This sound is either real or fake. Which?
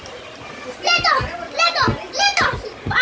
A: real